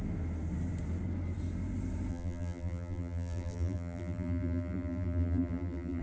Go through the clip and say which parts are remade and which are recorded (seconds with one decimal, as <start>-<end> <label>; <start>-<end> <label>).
0.0-2.1 recorded; 2.1-6.0 remade